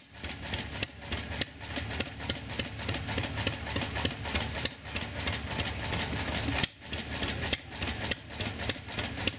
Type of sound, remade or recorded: recorded